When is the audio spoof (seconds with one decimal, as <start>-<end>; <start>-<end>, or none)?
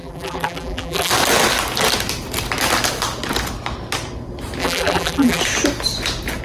0.0-1.1; 4.6-5.4